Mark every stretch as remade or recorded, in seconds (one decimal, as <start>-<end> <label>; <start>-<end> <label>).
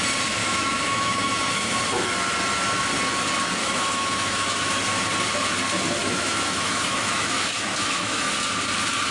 0.0-0.4 recorded; 0.4-1.8 remade; 1.8-3.6 recorded; 3.6-4.8 remade; 4.8-6.0 recorded; 6.0-8.3 remade; 8.3-9.1 recorded